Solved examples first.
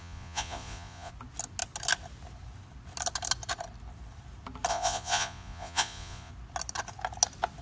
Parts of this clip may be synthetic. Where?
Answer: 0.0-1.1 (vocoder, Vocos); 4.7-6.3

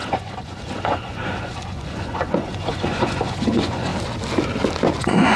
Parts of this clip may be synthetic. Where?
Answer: 0.0-3.9 (vocoder, Vocos); 5.0-5.4

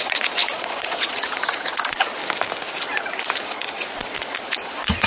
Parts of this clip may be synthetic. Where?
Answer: 0.0-2.2 (vocoder, Vocos); 2.9-5.1

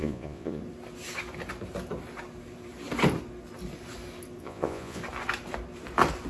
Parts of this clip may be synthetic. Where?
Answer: 0.0-0.6 (vocoder, Vocos); 4.4-5.0

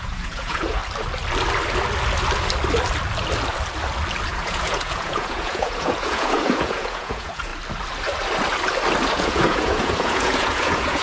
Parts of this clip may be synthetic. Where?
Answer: 0.0-0.8 (vocoder, Vocos); 4.3-7.5; 9.1-11.0